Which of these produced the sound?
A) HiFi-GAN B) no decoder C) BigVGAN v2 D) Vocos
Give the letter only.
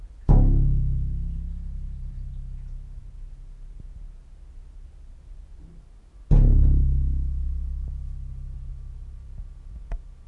B